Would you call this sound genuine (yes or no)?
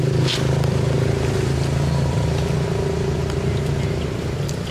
no